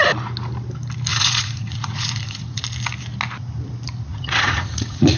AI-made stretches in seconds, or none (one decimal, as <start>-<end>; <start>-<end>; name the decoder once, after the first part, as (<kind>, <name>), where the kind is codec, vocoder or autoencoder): 1.1-2.6 (vocoder, Vocos); 4.1-5.2